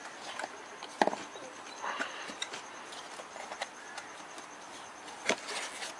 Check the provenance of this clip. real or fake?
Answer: real